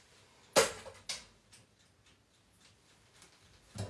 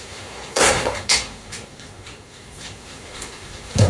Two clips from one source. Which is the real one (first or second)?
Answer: first